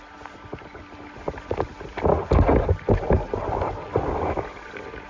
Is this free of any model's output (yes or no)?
yes